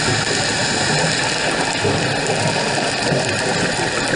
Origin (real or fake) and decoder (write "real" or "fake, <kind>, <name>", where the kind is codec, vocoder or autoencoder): real